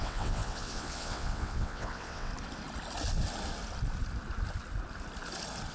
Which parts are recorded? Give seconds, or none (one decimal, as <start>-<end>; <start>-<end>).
2.3-5.7